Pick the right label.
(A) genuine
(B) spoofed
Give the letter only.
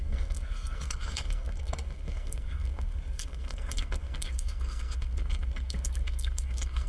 B